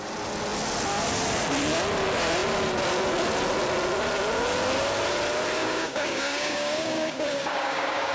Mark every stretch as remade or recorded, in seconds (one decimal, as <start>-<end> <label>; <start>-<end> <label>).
0.0-5.6 recorded; 5.6-8.1 remade